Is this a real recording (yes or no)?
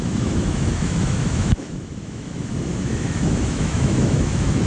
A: no